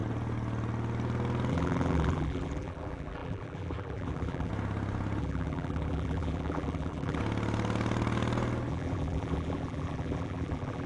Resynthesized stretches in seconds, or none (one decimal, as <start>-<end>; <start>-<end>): 1.5-4.5; 5.2-7.2; 8.7-10.9